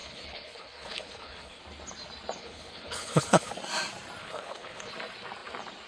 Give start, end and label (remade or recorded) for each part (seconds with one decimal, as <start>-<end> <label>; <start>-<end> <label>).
0.0-1.6 remade; 1.6-2.4 recorded; 2.4-3.5 remade; 3.5-4.2 recorded; 4.2-4.9 remade; 4.9-5.9 recorded